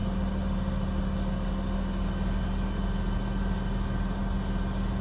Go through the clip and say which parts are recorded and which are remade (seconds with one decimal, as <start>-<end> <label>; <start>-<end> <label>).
0.0-5.0 recorded